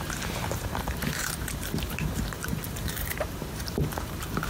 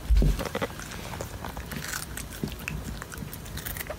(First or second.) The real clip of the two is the second